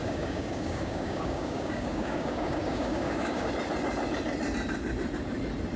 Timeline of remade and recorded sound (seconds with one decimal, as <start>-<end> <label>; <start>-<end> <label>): 0.0-3.5 remade; 3.5-5.8 recorded